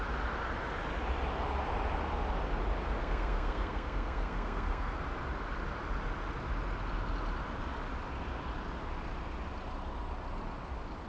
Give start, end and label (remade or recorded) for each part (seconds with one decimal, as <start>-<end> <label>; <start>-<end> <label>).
0.0-3.0 recorded; 3.0-5.0 remade; 5.0-11.1 recorded